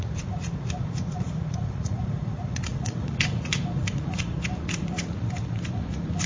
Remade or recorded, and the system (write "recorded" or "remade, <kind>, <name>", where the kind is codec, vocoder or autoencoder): remade, vocoder, Vocos